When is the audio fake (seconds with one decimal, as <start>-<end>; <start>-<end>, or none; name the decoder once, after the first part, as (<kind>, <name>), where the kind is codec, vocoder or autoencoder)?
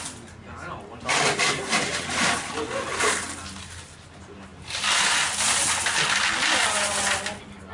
none